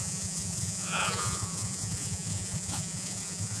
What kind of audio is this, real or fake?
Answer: fake